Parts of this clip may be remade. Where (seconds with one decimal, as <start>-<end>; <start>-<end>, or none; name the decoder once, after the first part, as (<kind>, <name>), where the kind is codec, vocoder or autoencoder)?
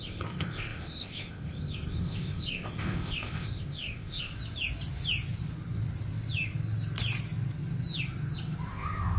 0.0-4.3 (codec, ZipCodec); 8.7-9.2